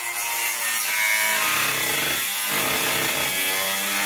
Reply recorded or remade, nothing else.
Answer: recorded